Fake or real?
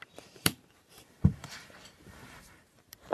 fake